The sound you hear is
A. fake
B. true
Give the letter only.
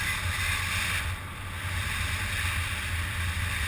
B